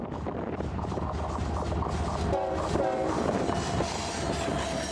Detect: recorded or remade recorded